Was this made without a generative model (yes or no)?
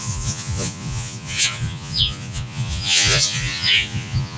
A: no